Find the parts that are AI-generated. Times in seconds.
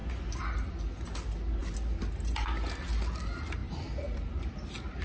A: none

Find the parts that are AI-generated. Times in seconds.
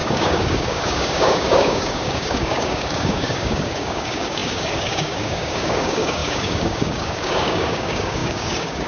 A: 0.0-8.9 (codec, DAC)